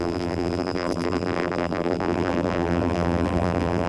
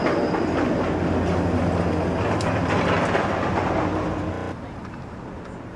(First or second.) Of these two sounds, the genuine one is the second